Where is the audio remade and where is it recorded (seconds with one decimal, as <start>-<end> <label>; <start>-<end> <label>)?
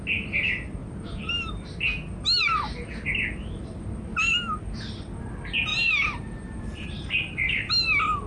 0.0-0.8 recorded; 0.8-1.5 remade; 1.5-5.7 recorded; 5.7-7.7 remade; 7.7-8.3 recorded